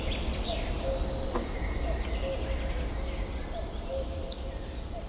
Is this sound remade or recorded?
recorded